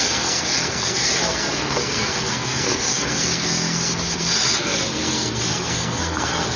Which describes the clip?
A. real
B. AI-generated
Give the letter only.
B